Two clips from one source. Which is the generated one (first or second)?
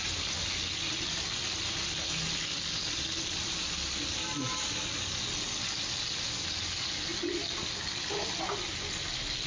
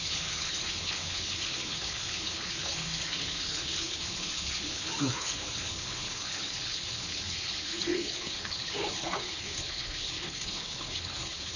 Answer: second